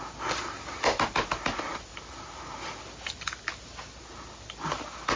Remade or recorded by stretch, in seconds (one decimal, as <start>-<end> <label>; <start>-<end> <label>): 0.0-5.2 recorded